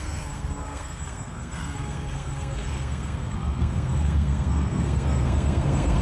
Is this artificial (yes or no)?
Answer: yes